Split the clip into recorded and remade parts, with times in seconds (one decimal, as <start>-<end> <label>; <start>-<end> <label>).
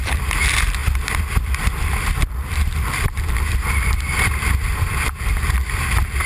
0.0-6.3 remade